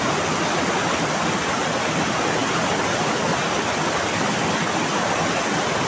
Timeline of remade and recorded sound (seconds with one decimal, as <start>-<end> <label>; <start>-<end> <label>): 0.0-5.9 recorded